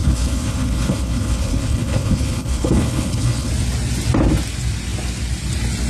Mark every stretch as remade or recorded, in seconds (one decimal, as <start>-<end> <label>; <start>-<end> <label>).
0.0-3.5 remade; 3.5-5.9 recorded